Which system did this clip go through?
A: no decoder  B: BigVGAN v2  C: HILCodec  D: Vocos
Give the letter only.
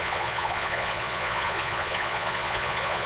D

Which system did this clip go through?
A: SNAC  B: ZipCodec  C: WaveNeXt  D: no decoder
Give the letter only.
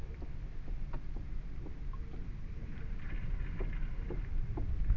D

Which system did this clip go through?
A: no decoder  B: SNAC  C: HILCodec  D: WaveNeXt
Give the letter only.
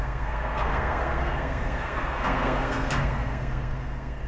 B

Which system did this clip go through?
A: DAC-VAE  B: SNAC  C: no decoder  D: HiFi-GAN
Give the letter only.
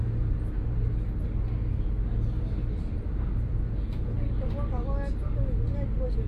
C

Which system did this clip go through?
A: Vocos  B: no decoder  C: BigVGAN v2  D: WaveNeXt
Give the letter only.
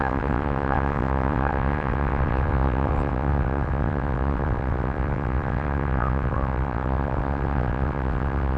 D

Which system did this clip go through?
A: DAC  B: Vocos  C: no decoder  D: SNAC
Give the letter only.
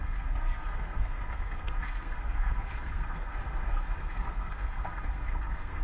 D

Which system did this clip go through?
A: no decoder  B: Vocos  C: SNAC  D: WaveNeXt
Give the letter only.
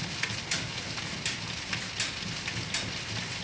A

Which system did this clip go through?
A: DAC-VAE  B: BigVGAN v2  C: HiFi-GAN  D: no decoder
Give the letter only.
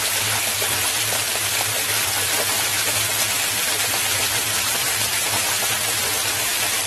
B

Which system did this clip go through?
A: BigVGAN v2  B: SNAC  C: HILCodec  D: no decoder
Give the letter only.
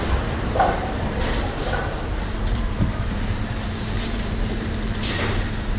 A